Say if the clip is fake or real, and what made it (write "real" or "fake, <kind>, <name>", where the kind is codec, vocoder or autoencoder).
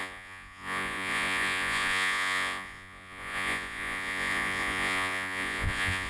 fake, vocoder, Vocos